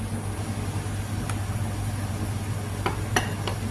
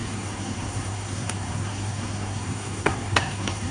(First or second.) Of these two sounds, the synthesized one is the second